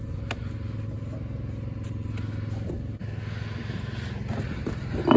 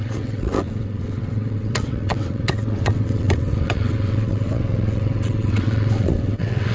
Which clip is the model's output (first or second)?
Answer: second